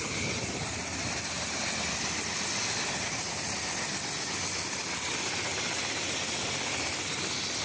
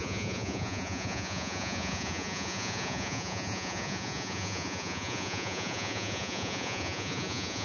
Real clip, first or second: first